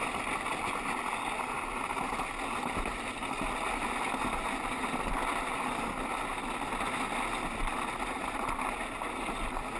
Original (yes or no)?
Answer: yes